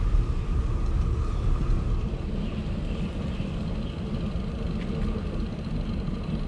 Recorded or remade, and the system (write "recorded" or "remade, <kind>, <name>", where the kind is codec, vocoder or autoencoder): recorded